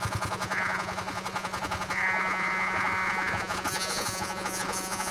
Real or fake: fake